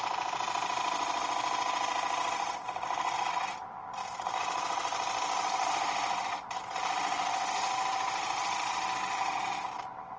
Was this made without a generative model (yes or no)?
yes